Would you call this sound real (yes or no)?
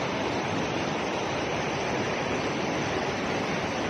no